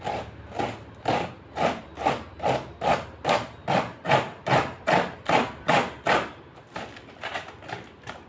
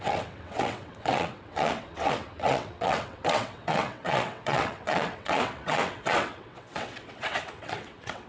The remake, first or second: second